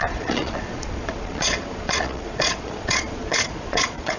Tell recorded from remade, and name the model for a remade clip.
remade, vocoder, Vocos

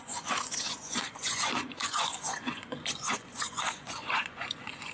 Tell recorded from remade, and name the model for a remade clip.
remade, vocoder, Vocos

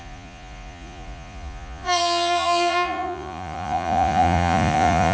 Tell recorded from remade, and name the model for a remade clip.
remade, vocoder, Vocos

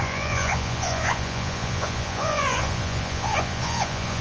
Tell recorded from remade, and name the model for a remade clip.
remade, vocoder, Vocos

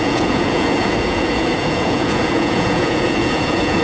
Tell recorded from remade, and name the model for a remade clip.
remade, vocoder, Vocos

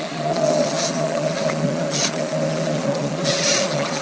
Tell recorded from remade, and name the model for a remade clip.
remade, vocoder, Vocos